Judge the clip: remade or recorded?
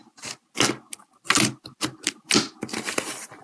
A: recorded